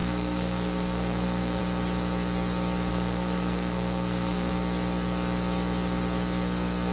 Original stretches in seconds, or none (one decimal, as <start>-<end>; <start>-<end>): 1.6-2.9; 4.5-6.9